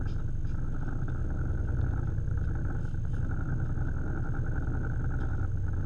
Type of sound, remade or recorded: recorded